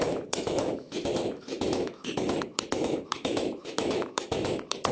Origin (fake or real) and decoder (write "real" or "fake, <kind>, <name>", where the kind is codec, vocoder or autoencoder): fake, autoencoder, DAC-VAE